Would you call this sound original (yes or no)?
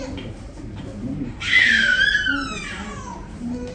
no